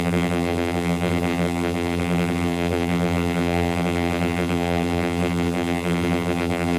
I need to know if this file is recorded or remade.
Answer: remade